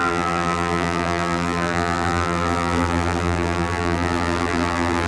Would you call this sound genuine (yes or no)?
no